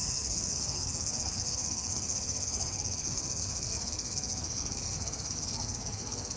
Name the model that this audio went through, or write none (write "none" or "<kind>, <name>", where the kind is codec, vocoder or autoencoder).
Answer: codec, SNAC